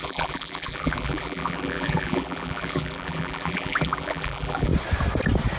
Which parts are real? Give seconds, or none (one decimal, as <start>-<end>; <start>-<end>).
4.7-5.6